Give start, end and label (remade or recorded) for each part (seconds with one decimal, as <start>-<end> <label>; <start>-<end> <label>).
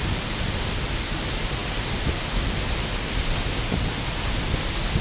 0.0-5.0 recorded